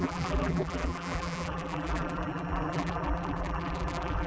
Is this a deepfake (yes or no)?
yes